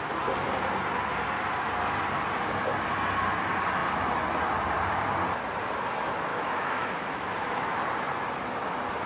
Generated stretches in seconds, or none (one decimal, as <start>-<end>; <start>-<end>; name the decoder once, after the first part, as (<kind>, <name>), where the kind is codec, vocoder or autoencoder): 6.3-7.8 (autoencoder, DAC-VAE)